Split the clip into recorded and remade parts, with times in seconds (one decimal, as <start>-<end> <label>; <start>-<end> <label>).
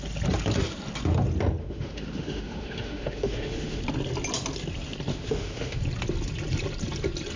0.0-1.6 recorded; 1.6-3.8 remade; 3.8-5.1 recorded; 5.1-5.8 remade; 5.8-7.4 recorded